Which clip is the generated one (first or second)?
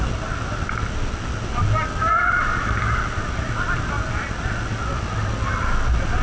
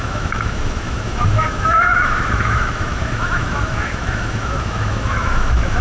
second